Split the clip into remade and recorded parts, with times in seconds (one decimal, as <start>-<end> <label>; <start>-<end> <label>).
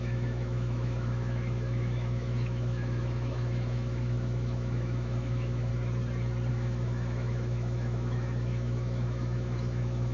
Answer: 0.0-5.7 remade; 5.7-6.5 recorded; 6.5-10.1 remade